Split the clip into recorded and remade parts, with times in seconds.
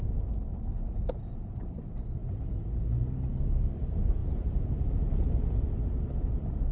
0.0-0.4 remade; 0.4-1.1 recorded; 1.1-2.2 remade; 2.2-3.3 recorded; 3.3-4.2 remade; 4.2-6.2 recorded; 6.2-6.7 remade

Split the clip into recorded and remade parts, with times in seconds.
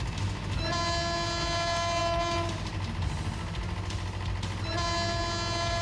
0.0-5.8 recorded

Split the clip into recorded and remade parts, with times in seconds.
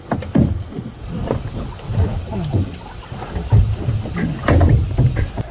0.0-5.5 recorded